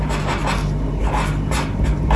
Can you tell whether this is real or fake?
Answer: real